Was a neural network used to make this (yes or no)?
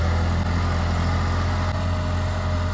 no